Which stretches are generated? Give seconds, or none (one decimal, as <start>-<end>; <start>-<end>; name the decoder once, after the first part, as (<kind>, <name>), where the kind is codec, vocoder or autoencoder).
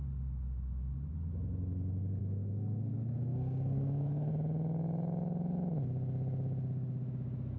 2.2-4.3 (codec, SNAC)